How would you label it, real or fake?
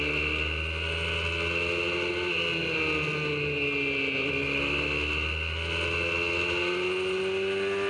real